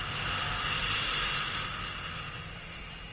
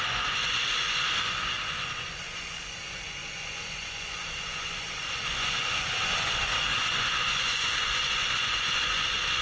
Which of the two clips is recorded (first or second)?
first